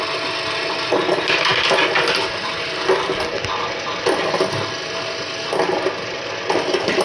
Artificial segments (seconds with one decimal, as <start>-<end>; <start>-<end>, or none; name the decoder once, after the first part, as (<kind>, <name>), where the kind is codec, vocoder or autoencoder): none